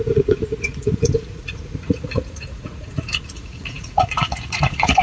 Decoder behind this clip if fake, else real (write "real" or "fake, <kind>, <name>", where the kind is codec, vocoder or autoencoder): fake, vocoder, Vocos